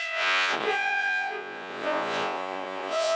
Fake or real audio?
fake